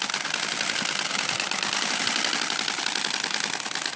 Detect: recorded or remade recorded